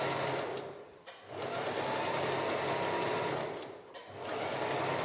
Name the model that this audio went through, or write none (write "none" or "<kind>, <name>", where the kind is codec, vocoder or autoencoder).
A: none